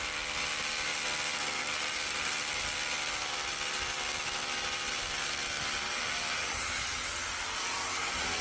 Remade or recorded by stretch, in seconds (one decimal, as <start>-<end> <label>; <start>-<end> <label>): 0.0-8.4 recorded